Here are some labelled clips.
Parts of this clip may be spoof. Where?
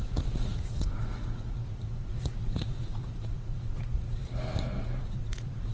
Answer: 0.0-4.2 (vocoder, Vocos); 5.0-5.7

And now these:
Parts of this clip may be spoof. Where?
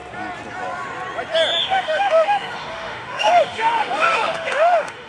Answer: 1.6-5.1 (autoencoder, DAC-VAE)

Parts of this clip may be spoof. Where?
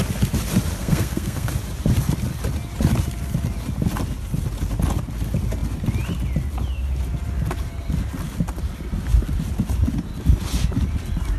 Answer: 0.8-1.5 (codec, SNAC)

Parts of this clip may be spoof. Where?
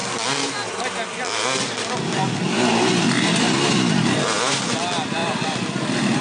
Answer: none